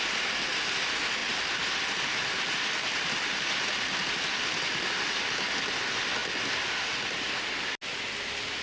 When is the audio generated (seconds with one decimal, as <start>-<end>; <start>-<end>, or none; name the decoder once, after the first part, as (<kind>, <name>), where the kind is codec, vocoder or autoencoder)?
none